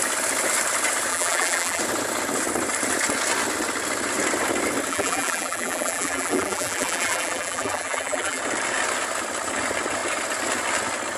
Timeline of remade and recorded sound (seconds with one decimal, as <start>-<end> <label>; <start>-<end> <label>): 0.0-1.1 recorded; 1.1-1.8 remade; 1.8-4.9 recorded; 4.9-8.4 remade; 8.4-11.2 recorded